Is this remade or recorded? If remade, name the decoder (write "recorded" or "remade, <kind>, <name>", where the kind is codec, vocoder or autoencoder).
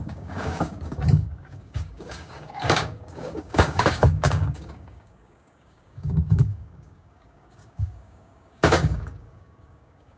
remade, codec, DAC